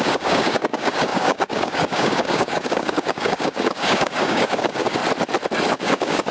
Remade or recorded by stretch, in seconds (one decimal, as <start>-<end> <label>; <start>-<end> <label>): 0.0-5.0 remade; 5.0-5.7 recorded; 5.7-6.3 remade